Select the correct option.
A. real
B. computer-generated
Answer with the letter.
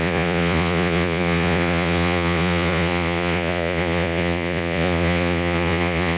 B